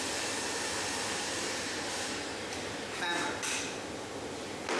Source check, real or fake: real